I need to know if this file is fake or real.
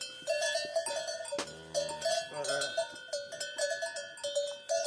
real